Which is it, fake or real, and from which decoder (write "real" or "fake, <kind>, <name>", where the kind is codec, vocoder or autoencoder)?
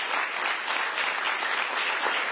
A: real